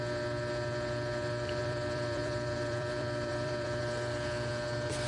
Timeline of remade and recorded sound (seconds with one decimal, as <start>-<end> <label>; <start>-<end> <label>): 0.0-1.6 recorded; 1.6-3.8 remade; 3.8-5.1 recorded